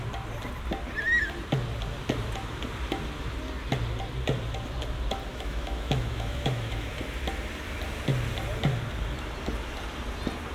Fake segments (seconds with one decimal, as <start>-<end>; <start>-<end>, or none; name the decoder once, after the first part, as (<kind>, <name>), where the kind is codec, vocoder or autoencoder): 5.3-6.9 (autoencoder, DAC-VAE)